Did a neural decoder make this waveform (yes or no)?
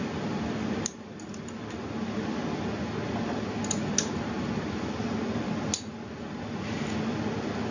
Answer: no